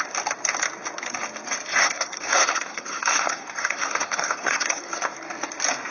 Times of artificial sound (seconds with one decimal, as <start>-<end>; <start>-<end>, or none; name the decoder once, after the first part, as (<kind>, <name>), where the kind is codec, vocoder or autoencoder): 1.8-4.9 (codec, SNAC)